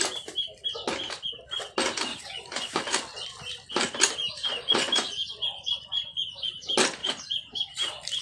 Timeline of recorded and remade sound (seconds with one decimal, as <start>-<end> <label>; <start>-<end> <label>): 0.0-2.1 recorded; 2.1-2.8 remade; 2.8-4.4 recorded; 4.4-6.5 remade; 6.5-7.0 recorded; 7.0-7.7 remade; 7.7-8.2 recorded